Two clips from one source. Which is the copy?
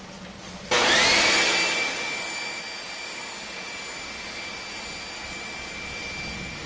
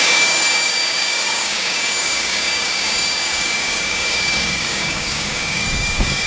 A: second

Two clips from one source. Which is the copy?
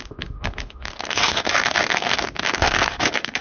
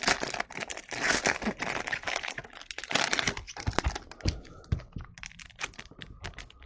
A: first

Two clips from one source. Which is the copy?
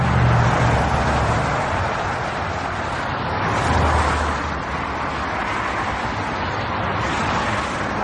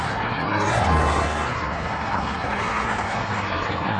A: second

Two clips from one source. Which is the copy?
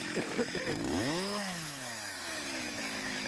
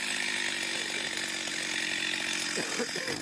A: first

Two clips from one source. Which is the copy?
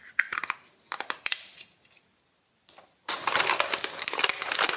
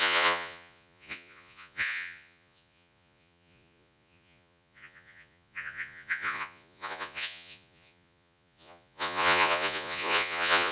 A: second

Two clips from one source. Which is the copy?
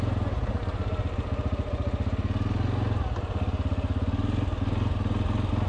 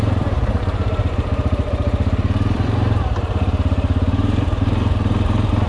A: second